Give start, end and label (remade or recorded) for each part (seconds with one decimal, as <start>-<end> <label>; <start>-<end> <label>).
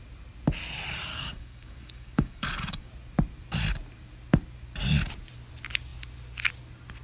0.0-1.1 recorded; 1.1-2.9 remade; 2.9-7.0 recorded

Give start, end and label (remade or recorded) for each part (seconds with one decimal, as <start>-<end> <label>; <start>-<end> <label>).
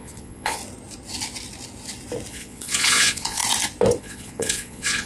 0.0-0.6 remade; 0.6-2.3 recorded; 2.3-3.4 remade; 3.4-4.0 recorded; 4.0-5.1 remade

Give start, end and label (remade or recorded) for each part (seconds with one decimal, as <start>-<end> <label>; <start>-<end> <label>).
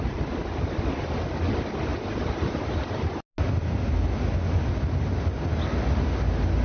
0.0-6.6 recorded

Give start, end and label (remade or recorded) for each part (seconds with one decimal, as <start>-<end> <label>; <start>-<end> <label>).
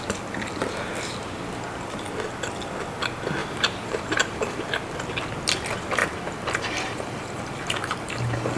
0.0-3.4 recorded; 3.4-4.7 remade; 4.7-6.0 recorded; 6.0-8.6 remade